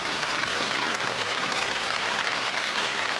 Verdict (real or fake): fake